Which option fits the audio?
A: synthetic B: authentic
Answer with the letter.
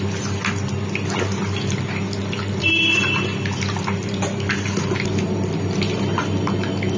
B